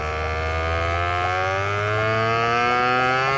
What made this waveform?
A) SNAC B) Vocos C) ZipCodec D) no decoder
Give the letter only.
D